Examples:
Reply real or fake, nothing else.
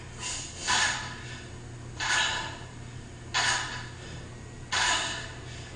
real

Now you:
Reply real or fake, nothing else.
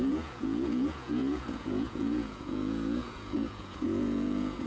fake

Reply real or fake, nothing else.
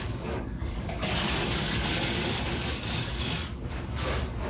fake